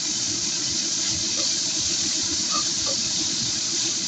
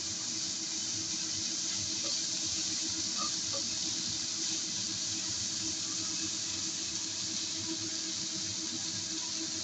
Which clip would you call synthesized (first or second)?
first